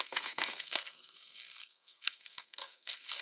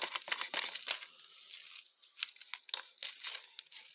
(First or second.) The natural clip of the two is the second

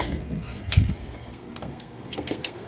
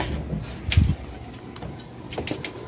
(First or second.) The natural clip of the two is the second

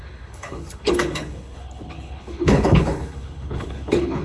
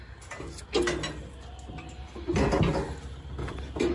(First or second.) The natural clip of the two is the second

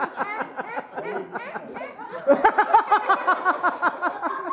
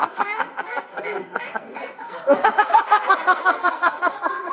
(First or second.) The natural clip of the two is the first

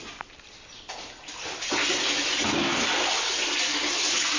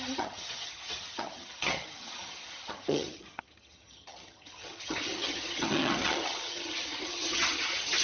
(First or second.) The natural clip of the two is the first